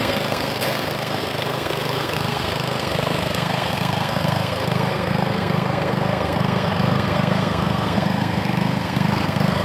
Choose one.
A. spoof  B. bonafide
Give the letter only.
A